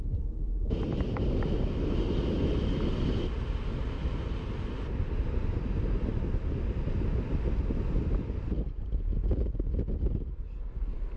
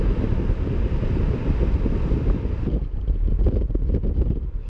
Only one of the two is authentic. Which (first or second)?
first